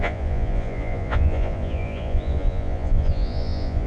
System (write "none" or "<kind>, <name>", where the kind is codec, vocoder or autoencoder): vocoder, Vocos